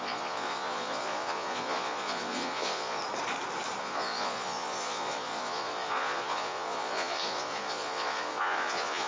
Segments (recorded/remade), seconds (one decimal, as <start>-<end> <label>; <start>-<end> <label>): 0.0-3.0 remade; 3.0-3.8 recorded; 3.8-9.1 remade